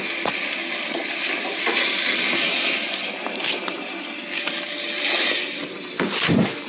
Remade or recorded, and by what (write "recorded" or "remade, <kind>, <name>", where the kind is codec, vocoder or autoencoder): recorded